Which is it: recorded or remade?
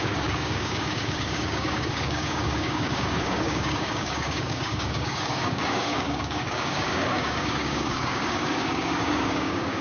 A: remade